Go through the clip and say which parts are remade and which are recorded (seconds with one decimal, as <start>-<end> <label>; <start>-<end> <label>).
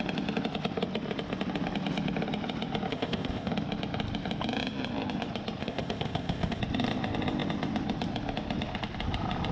0.0-2.9 recorded; 2.9-3.5 remade; 3.5-5.6 recorded; 5.6-6.6 remade; 6.6-9.5 recorded